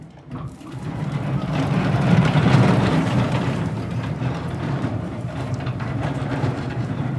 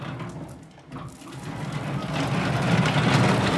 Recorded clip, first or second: second